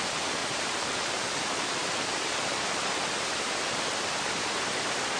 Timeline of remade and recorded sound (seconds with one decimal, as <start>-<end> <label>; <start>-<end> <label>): 0.0-0.4 recorded; 0.4-1.1 remade; 1.1-1.8 recorded; 1.8-5.2 remade